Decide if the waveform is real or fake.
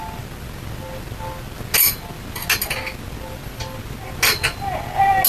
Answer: real